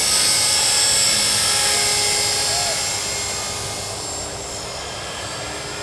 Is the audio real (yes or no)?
yes